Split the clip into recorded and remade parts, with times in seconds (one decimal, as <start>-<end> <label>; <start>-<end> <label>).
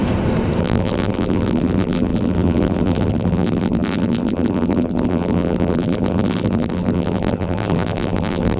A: 0.0-0.6 recorded; 0.6-8.6 remade